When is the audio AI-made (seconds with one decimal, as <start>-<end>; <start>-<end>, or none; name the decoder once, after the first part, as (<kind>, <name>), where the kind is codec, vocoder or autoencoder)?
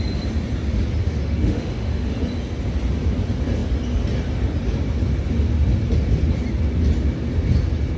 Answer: 1.0-2.2 (autoencoder, DAC-VAE)